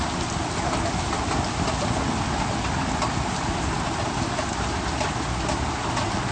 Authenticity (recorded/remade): recorded